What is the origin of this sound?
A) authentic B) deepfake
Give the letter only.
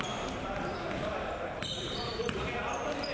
B